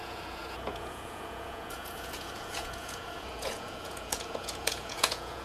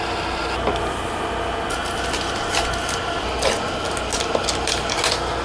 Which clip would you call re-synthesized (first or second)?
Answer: first